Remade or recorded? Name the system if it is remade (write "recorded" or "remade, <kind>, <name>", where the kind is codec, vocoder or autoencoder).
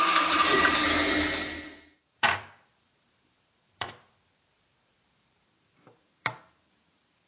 remade, vocoder, BigVGAN v2